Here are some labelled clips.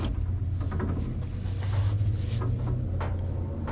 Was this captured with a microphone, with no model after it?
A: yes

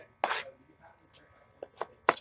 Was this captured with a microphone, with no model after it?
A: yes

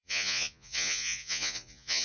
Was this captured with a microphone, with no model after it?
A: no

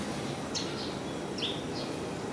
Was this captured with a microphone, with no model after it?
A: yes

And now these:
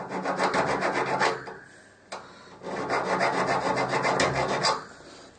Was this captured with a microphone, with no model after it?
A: yes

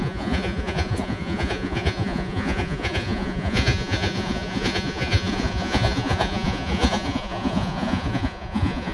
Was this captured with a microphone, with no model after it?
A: no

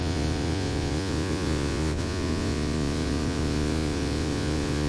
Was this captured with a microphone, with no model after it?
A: no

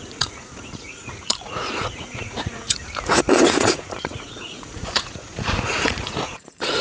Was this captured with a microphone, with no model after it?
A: no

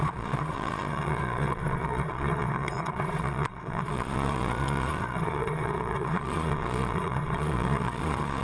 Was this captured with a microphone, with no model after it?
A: no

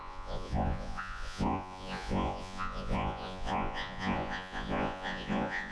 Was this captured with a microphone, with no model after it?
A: no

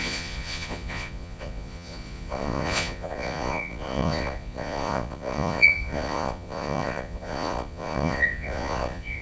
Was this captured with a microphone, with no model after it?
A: no